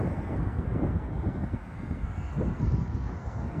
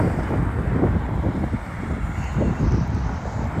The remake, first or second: first